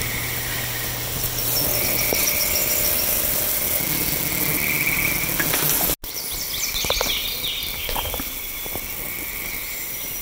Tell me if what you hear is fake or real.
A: real